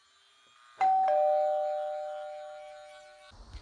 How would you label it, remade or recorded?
recorded